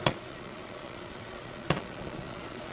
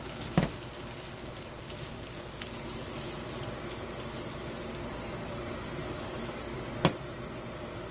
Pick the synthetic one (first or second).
first